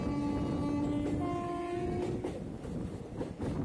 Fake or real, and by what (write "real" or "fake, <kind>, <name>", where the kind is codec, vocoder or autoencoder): real